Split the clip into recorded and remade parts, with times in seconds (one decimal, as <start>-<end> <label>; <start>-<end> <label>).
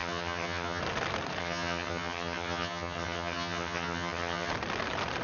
0.0-0.8 remade; 0.8-1.4 recorded; 1.4-4.5 remade; 4.5-5.2 recorded